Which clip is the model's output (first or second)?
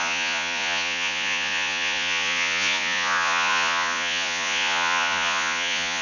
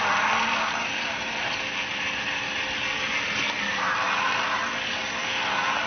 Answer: first